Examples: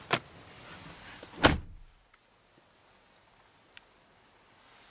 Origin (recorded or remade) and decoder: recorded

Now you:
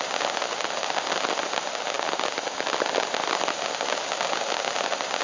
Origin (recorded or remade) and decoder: recorded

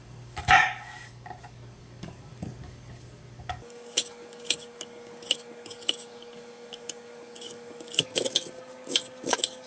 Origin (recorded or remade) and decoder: remade, codec, DAC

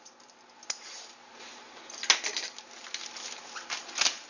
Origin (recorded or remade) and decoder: recorded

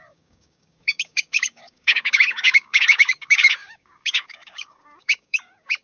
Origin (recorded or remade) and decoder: remade, codec, DAC